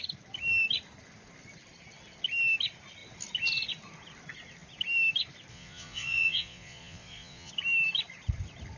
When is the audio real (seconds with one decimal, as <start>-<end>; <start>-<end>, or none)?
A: 0.0-5.5; 7.5-8.8